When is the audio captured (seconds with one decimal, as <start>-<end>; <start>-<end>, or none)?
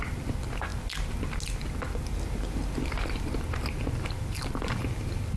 0.0-5.4